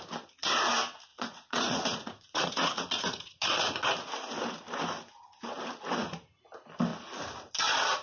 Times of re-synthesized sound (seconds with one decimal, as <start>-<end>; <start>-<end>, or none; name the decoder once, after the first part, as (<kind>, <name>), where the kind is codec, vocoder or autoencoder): 1.1-3.9 (vocoder, Vocos)